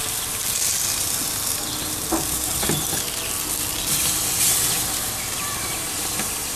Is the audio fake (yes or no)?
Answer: no